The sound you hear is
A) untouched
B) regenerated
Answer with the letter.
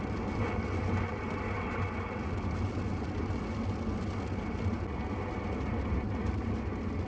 A